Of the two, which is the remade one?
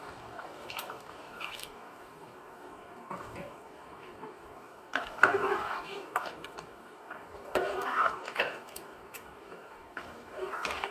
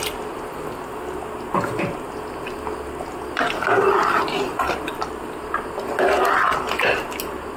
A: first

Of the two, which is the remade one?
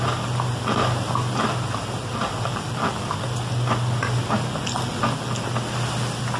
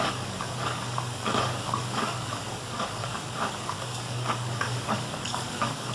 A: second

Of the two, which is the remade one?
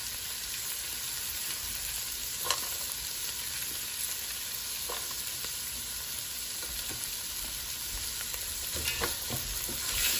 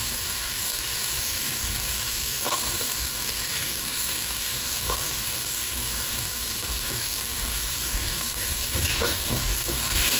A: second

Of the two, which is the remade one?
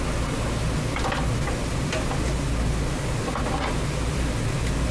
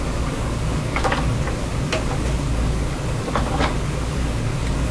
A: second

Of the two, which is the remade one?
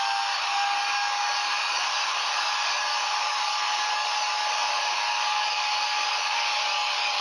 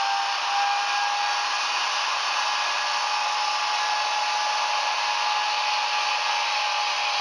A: first